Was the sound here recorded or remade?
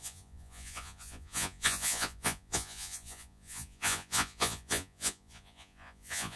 remade